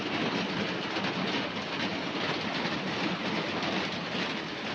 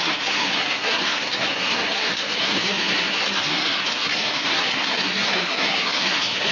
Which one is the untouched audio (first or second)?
first